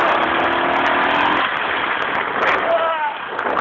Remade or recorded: recorded